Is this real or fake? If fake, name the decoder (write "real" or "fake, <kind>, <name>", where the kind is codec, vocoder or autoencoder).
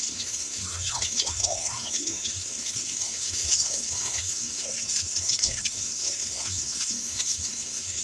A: fake, codec, SNAC